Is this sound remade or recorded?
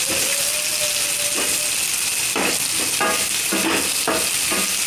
recorded